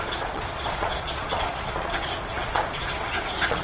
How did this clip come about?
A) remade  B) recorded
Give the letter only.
A